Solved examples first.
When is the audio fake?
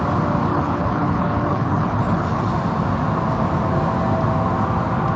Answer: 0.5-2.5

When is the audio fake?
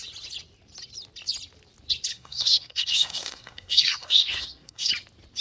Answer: 2.1-4.9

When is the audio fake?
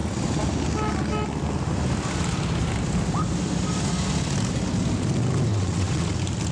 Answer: 5.5-6.1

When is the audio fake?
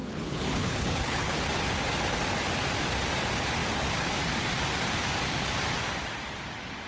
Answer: 0.0-1.4